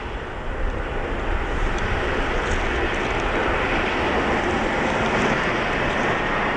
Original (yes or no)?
yes